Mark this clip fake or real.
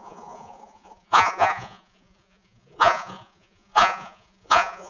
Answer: fake